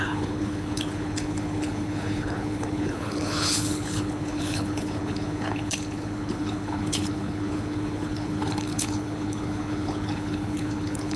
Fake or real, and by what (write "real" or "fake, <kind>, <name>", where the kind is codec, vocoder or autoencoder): fake, codec, HILCodec